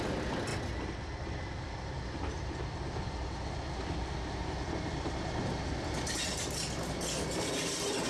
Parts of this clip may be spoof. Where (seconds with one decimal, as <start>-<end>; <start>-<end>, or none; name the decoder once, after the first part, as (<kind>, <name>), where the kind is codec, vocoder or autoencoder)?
none